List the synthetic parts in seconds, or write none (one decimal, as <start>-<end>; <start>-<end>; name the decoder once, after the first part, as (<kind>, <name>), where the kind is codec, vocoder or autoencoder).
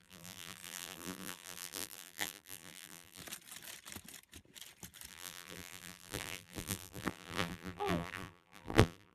0.0-3.2 (vocoder, BigVGAN v2); 5.1-9.1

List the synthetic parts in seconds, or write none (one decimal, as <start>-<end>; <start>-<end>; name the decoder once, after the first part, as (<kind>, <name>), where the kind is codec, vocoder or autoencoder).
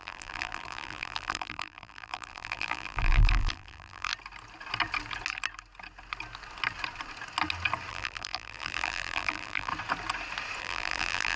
0.0-4.1 (vocoder, BigVGAN v2); 7.9-9.7; 10.6-11.4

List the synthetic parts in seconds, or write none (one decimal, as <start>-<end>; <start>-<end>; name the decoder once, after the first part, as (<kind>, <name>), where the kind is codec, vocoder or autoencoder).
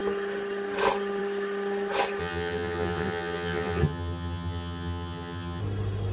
2.2-5.6 (vocoder, HiFi-GAN)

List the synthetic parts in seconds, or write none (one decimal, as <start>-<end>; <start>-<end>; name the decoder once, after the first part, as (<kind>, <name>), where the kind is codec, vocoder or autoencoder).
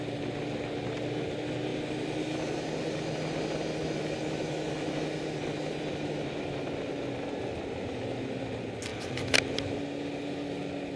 none